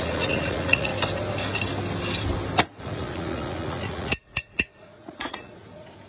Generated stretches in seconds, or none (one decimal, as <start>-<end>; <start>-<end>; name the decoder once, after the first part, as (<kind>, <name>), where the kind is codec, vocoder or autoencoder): 0.0-0.9 (vocoder, Vocos); 2.8-6.1